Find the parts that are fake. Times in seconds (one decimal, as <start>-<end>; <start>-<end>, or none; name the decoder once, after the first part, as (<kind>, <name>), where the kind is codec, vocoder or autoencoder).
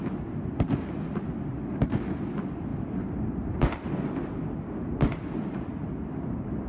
none